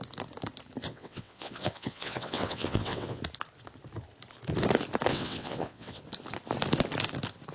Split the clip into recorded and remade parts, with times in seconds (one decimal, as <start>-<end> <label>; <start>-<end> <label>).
0.0-0.8 recorded; 0.8-3.2 remade; 3.2-5.1 recorded; 5.1-6.0 remade; 6.0-7.5 recorded